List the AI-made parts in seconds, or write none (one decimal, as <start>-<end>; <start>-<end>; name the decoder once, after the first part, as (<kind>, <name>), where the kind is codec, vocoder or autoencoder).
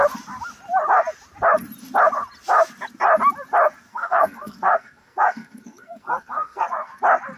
3.9-7.0 (codec, SNAC)